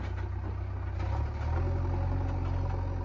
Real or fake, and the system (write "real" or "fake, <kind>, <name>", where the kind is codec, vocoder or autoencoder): real